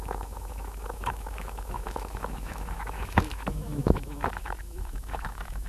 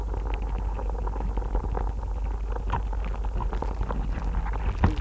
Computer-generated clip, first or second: first